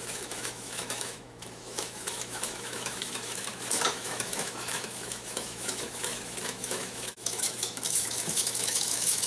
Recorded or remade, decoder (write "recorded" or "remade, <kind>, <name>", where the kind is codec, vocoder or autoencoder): remade, autoencoder, DAC-VAE